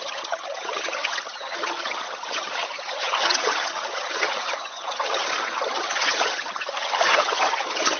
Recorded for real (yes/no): no